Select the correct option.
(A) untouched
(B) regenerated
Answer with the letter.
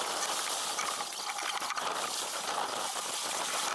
A